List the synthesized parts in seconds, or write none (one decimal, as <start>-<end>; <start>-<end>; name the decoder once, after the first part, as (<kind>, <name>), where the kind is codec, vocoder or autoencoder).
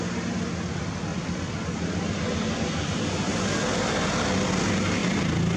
1.1-3.0 (vocoder, BigVGAN v2); 5.0-5.6